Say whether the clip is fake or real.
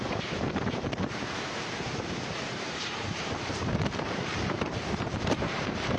fake